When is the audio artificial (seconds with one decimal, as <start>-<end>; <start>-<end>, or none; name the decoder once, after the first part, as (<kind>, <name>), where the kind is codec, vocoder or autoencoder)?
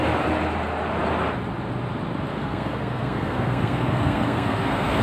2.3-5.0 (codec, SNAC)